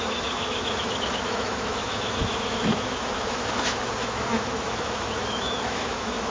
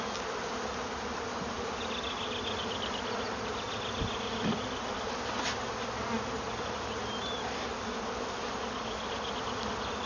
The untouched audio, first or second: second